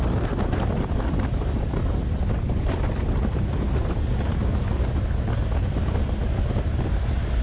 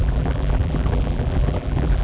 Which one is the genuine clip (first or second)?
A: first